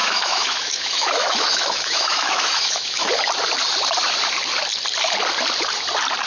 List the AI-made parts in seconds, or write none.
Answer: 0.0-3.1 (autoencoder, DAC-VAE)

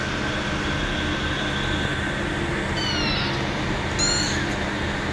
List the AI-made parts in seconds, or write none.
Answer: none

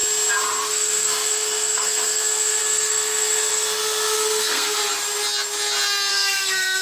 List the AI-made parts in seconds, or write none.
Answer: 0.7-4.8 (codec, SNAC); 6.1-6.8

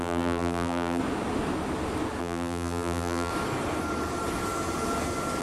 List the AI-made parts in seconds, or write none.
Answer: 0.0-1.0 (vocoder, BigVGAN v2); 2.2-3.3

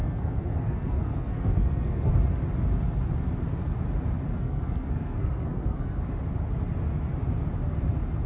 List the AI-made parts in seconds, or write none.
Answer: 0.0-2.1 (codec, SNAC); 4.4-6.0